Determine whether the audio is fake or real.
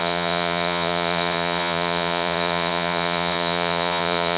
fake